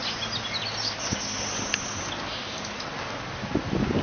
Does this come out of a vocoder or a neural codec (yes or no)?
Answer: no